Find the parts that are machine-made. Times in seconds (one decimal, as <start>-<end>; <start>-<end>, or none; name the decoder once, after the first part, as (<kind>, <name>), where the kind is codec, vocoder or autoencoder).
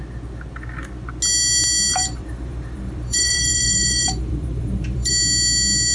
1.9-5.1 (vocoder, BigVGAN v2)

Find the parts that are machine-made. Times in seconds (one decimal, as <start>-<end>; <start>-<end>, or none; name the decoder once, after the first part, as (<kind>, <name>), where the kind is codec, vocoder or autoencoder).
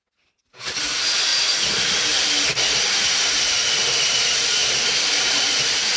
none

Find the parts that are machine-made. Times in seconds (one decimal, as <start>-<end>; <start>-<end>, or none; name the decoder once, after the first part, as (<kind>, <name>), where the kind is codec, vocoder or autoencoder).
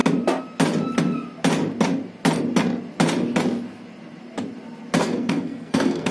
5.0-6.1 (codec, SNAC)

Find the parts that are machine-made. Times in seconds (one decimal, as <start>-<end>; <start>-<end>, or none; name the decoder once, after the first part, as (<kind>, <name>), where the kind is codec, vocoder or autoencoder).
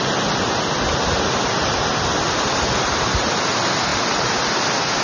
none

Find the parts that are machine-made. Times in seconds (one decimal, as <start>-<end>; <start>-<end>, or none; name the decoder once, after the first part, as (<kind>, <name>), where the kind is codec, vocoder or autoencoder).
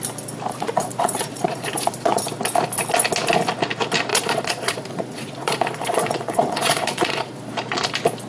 0.5-2.2 (vocoder, Vocos); 4.1-7.5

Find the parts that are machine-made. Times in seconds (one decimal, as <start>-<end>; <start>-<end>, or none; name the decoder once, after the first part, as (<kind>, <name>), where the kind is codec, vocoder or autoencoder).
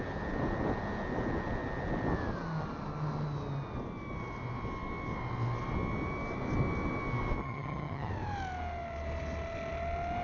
7.4-8.1 (vocoder, HiFi-GAN)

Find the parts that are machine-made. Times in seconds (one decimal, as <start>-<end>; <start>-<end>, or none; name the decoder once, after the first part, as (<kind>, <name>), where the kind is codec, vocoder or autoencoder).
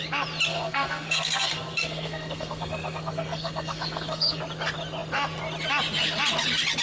0.5-4.4 (codec, SNAC)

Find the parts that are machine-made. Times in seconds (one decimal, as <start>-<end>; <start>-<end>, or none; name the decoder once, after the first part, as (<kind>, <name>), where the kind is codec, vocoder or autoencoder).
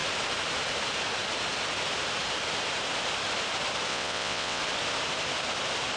3.9-4.6 (vocoder, WaveNeXt)